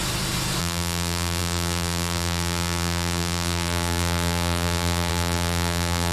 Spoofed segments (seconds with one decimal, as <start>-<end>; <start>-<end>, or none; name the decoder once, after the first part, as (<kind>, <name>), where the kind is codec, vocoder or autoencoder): 0.6-6.1 (vocoder, BigVGAN v2)